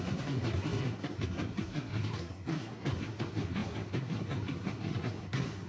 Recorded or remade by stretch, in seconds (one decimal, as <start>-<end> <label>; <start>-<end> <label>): 0.0-5.7 remade